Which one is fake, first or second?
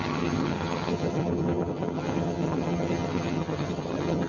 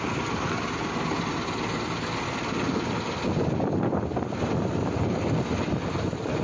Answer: first